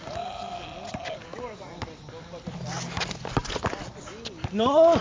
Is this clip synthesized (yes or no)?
no